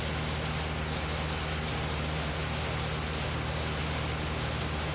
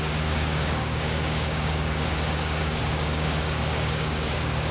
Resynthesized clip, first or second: second